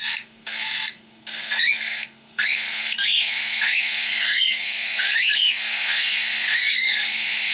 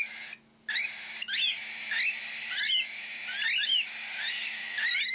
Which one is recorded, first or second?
second